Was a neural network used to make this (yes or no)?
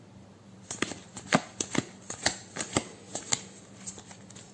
no